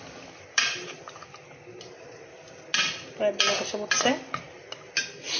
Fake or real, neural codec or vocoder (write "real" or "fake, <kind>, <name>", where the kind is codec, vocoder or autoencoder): real